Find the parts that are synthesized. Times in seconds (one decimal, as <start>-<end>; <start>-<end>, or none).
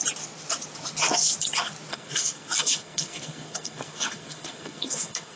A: 1.9-5.4